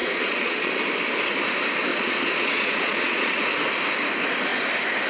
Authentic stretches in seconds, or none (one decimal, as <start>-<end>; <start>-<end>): 0.7-1.9; 3.4-5.1